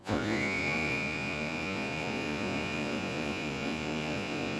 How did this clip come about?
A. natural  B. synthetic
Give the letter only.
B